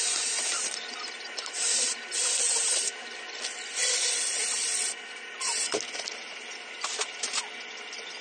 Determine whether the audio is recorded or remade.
recorded